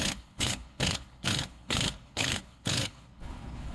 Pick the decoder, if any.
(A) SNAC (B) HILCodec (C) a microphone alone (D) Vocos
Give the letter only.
B